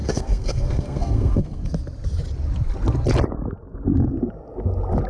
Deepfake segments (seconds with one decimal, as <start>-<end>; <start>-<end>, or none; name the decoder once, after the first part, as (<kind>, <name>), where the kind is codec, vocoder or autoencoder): 0.0-1.6 (codec, SNAC)